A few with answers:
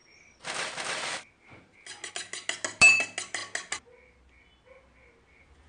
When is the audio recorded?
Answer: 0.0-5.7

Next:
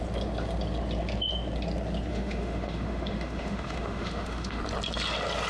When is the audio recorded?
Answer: 0.0-2.1; 4.6-5.5

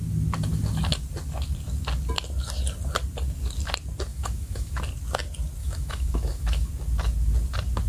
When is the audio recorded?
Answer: 0.0-4.1; 4.8-5.6; 6.7-7.9

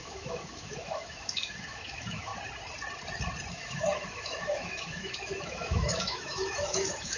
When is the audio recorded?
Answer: 2.3-3.5

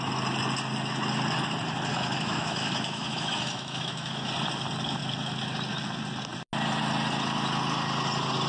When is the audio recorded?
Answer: 0.0-1.9; 4.3-8.5

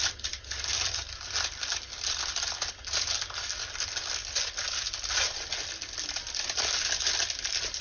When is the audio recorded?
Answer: 0.0-7.8